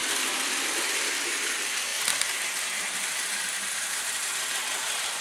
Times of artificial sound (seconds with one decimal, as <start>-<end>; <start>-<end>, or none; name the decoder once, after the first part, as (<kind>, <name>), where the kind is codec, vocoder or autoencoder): 1.9-4.3 (vocoder, BigVGAN v2)